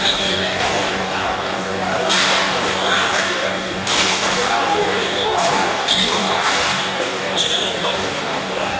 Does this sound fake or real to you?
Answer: fake